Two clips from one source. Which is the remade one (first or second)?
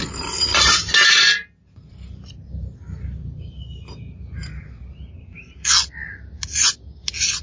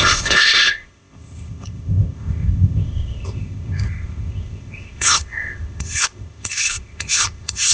second